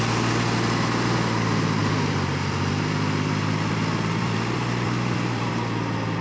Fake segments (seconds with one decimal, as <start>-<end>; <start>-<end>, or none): 1.8-5.5